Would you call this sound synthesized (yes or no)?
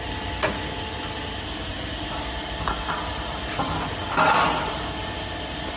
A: no